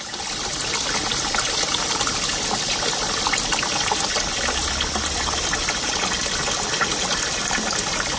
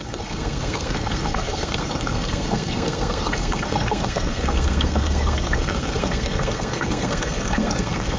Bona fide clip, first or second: first